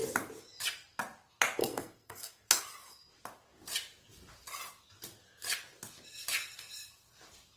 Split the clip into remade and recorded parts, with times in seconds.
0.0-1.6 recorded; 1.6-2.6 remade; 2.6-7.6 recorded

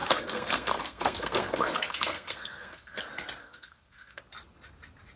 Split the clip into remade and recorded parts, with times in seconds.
0.0-3.0 remade; 3.0-3.4 recorded; 3.4-4.2 remade; 4.2-5.2 recorded

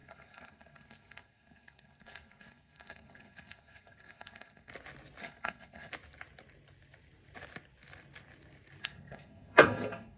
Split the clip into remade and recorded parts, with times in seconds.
0.0-4.7 remade; 4.7-5.2 recorded; 5.2-5.9 remade; 5.9-8.8 recorded; 8.8-10.2 remade